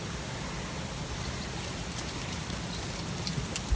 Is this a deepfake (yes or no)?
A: no